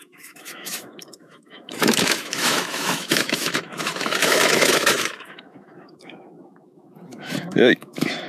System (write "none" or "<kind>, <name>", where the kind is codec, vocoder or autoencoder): autoencoder, DAC-VAE